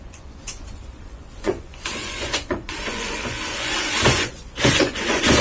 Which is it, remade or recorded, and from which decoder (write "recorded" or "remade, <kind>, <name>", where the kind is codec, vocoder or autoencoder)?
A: remade, vocoder, Vocos